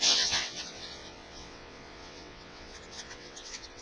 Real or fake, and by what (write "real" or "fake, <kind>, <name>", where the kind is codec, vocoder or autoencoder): fake, vocoder, WaveNeXt